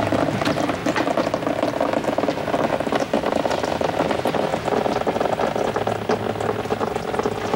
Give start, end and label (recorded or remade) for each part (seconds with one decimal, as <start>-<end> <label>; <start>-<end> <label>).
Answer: 0.0-0.8 remade; 0.8-2.7 recorded; 2.7-4.5 remade; 4.5-7.6 recorded